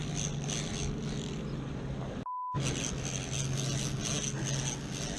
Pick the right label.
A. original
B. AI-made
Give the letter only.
A